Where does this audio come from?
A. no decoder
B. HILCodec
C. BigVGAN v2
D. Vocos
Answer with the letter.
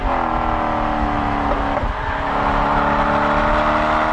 A